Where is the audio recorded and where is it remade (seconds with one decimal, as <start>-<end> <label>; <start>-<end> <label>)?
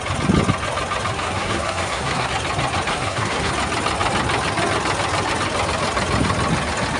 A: 0.0-1.2 recorded; 1.2-2.3 remade; 2.3-2.9 recorded; 2.9-3.5 remade; 3.5-7.0 recorded